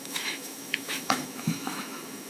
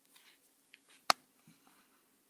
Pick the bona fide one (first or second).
second